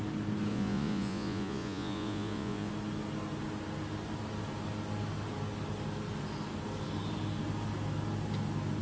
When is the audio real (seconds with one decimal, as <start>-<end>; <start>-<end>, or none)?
0.0-0.5; 2.7-8.8